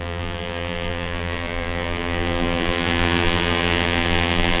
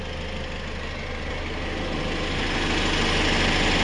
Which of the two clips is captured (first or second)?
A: second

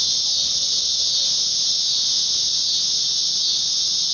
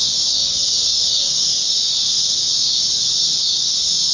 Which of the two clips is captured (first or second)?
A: first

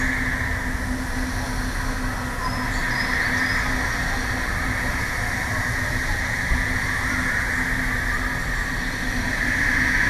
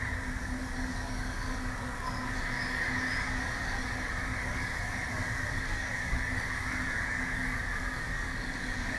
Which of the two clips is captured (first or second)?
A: first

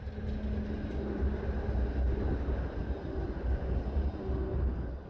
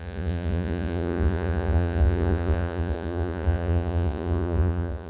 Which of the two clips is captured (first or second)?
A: first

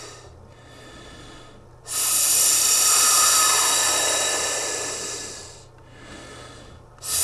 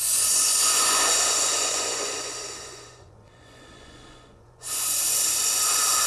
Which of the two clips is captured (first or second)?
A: first